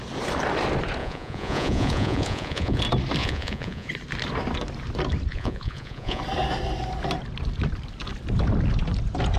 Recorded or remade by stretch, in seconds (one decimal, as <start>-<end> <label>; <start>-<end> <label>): 0.0-1.0 recorded; 1.0-2.8 remade; 2.8-3.2 recorded; 3.2-3.9 remade; 3.9-5.3 recorded; 5.3-6.2 remade; 6.2-9.4 recorded